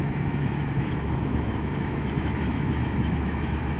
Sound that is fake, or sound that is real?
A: fake